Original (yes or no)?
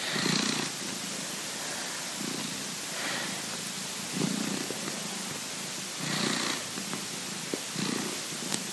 yes